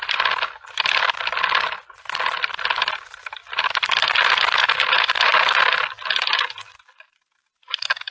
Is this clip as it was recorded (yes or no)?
yes